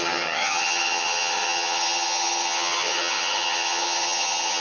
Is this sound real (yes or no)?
no